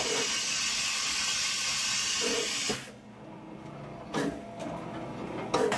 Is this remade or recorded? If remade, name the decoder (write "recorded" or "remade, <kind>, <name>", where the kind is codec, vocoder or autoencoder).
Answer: recorded